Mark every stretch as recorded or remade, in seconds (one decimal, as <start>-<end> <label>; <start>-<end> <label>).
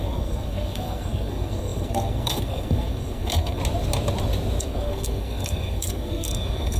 0.0-3.6 remade; 3.6-4.6 recorded; 4.6-6.8 remade